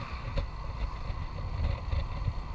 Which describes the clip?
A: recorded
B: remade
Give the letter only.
A